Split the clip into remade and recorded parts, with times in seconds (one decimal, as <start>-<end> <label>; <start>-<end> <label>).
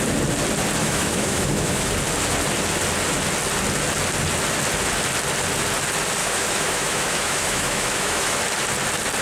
0.0-0.8 recorded; 0.8-1.9 remade; 1.9-6.2 recorded; 6.2-8.4 remade; 8.4-9.2 recorded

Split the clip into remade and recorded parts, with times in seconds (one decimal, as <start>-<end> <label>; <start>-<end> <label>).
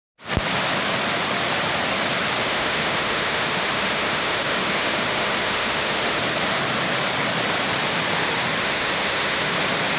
0.0-2.4 recorded; 2.4-6.2 remade; 6.2-8.6 recorded; 8.6-9.5 remade; 9.5-10.0 recorded